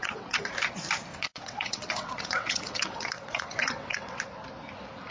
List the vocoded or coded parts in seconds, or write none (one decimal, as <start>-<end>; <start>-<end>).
0.0-0.5; 1.1-4.2